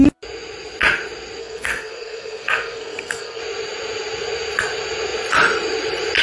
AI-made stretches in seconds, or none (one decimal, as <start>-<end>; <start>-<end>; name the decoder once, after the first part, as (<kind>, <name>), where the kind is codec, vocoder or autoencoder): 1.4-3.4 (codec, SNAC)